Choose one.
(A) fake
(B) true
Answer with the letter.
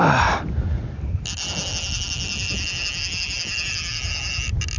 B